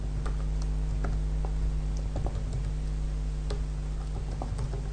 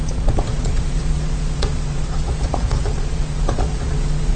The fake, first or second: second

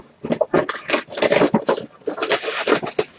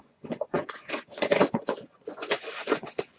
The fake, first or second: second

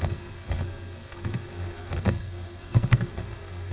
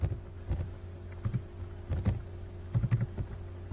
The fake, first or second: first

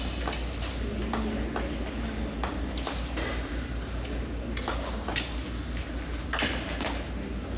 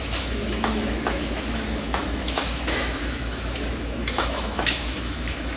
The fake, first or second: second